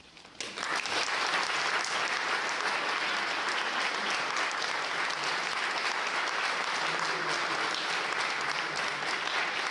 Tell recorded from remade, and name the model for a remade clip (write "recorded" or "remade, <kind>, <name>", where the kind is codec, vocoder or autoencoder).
recorded